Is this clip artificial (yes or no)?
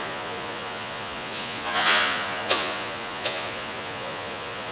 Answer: yes